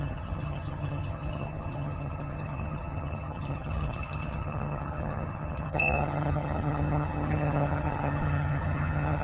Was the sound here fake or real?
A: fake